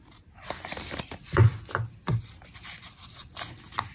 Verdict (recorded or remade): recorded